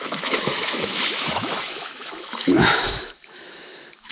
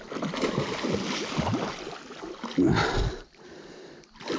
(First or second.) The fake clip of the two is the first